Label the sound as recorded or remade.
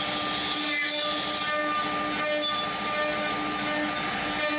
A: recorded